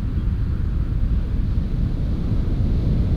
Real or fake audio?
real